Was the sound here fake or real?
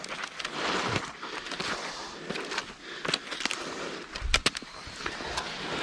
real